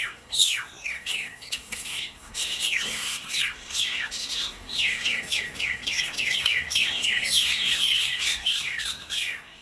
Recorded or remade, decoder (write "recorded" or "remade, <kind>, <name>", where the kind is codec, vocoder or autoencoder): remade, codec, SNAC